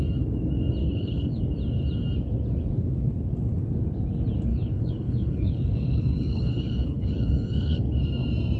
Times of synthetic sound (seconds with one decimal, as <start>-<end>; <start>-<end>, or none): 0.8-1.4; 4.5-7.8